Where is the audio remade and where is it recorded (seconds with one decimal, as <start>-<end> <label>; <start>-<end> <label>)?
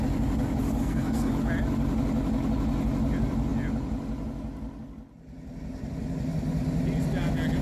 0.0-0.8 recorded; 0.8-1.3 remade; 1.3-7.6 recorded